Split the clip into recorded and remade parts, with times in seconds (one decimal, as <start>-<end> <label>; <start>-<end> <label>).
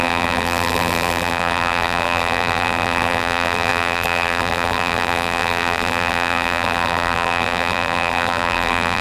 0.0-9.0 remade